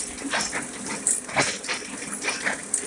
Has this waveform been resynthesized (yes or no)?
no